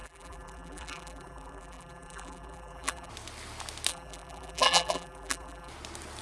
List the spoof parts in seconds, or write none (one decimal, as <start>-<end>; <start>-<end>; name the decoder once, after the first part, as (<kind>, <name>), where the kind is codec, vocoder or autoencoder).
0.0-3.1 (vocoder, BigVGAN v2); 3.9-5.7